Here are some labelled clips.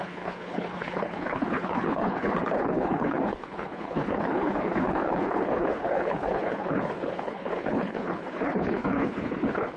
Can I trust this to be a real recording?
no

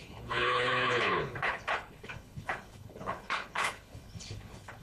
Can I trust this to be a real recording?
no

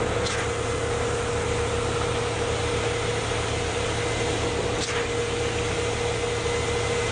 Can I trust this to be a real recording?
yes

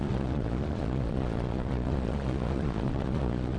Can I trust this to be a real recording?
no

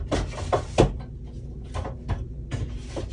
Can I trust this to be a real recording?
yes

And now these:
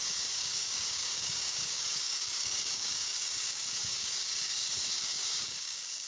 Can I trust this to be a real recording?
no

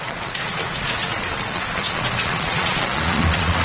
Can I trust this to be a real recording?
no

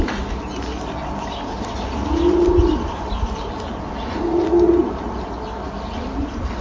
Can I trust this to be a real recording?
yes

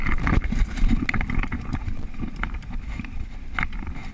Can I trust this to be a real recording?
yes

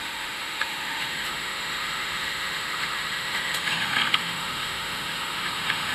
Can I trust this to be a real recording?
no